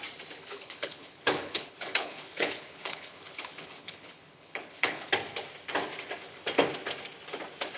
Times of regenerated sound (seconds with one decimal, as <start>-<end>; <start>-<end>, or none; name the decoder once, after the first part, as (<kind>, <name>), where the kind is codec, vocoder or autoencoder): 0.4-5.1 (codec, HILCodec)